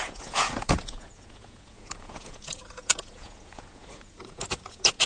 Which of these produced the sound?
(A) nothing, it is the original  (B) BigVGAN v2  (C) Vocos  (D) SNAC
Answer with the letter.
C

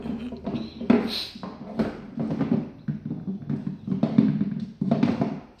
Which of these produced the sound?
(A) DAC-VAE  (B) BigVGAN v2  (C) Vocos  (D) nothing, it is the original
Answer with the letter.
D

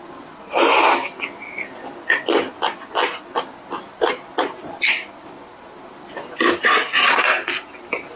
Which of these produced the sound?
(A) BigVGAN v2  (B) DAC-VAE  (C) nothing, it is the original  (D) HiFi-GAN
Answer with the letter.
C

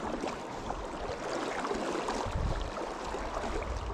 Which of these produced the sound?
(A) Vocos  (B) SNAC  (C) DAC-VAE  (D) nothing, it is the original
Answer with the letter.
D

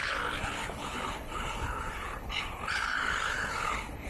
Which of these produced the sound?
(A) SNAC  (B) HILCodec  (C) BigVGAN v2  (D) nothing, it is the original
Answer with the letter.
B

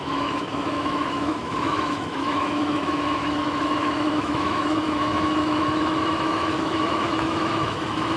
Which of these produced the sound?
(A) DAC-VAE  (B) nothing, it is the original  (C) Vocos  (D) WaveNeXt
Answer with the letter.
A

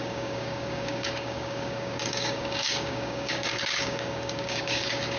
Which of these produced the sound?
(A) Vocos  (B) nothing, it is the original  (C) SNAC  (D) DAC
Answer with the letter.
D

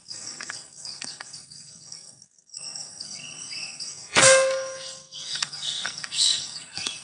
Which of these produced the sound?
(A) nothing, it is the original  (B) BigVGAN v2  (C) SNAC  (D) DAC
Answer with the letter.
C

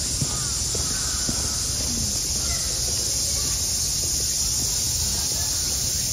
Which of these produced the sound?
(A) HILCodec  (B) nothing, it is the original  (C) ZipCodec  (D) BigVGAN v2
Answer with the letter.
B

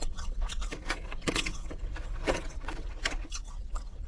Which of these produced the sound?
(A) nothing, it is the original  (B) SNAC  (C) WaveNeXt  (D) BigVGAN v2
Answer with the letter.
C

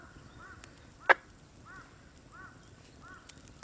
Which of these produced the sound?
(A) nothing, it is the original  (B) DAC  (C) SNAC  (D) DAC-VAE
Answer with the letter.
A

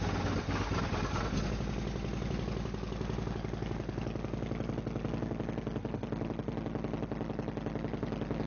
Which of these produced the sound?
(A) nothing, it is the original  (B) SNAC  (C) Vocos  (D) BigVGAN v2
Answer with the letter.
A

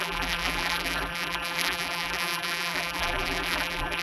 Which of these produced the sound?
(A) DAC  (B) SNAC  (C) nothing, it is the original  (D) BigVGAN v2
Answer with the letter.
D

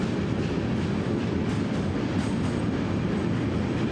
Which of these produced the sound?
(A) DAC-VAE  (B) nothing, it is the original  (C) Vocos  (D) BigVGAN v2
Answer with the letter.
B